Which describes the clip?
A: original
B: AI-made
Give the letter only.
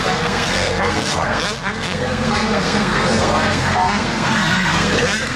B